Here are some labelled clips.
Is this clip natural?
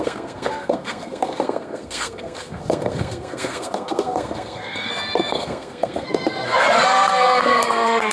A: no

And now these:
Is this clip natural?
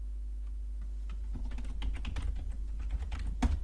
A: yes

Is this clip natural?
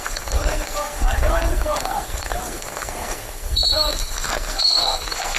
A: no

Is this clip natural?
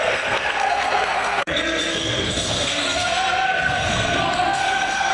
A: no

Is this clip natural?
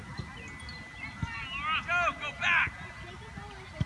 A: yes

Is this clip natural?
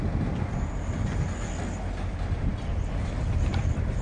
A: yes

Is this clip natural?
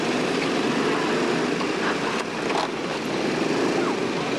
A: yes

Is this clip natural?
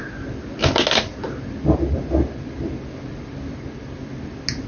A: yes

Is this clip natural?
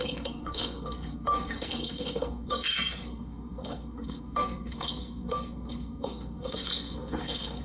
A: no